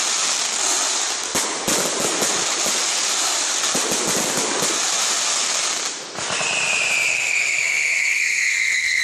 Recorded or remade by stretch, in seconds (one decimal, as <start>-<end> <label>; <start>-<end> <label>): 0.0-7.1 recorded; 7.1-9.0 remade